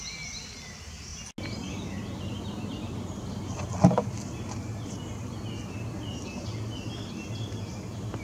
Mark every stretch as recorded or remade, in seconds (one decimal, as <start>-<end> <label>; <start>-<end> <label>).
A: 0.0-8.2 recorded